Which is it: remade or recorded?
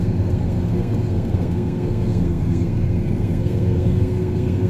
remade